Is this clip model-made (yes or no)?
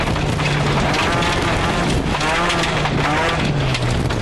no